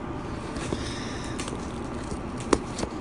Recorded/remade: recorded